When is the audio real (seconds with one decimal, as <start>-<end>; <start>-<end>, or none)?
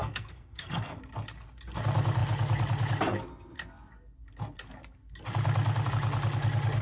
1.0-6.8